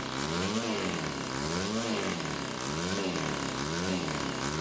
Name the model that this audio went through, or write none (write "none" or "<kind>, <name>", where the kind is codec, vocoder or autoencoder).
none